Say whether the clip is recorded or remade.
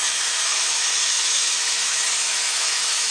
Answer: remade